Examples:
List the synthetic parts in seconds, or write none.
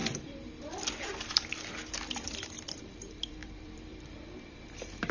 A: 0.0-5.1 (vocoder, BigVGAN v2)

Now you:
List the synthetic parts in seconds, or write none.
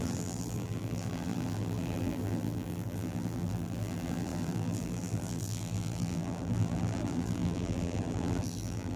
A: 0.0-9.0 (vocoder, BigVGAN v2)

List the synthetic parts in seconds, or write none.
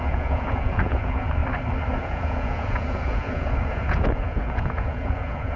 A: 0.0-1.4 (vocoder, Vocos); 2.0-5.6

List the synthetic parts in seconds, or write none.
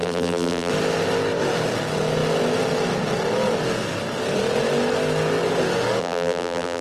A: 0.0-0.7 (vocoder, BigVGAN v2); 6.0-6.8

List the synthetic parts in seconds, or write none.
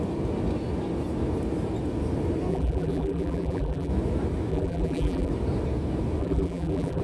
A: 2.5-3.9 (vocoder, BigVGAN v2); 4.5-5.3; 6.2-7.0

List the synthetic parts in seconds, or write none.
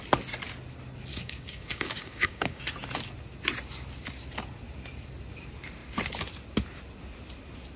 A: 1.1-2.6 (codec, DAC)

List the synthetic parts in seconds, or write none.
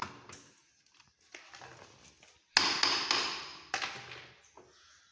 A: none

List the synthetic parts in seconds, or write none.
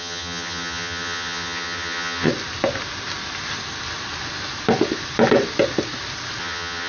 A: 0.0-2.3 (vocoder, HiFi-GAN); 6.4-6.9